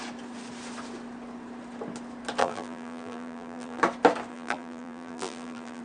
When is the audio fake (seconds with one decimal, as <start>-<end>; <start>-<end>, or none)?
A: 2.4-3.8; 4.3-5.8